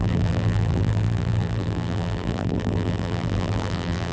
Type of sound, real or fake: fake